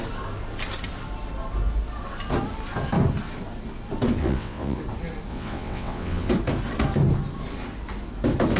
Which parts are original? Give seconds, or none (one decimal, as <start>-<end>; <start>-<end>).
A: 0.0-4.2; 4.8-5.3; 6.3-8.6